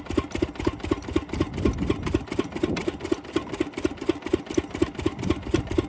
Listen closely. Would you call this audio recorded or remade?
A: recorded